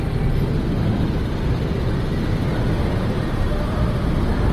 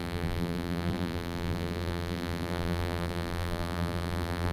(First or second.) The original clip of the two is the first